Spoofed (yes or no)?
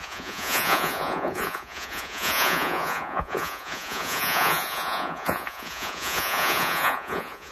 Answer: yes